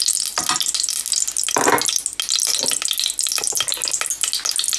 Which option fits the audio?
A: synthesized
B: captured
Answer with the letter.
B